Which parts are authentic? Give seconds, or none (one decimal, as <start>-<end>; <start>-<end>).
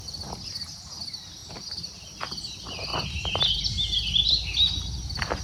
0.0-5.4